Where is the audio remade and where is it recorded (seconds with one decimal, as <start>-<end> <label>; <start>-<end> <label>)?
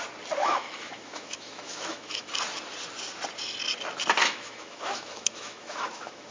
0.0-0.4 recorded; 0.4-2.3 remade; 2.3-4.2 recorded; 4.2-6.3 remade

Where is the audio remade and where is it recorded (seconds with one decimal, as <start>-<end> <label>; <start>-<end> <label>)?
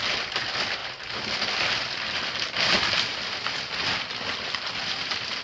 0.0-5.4 recorded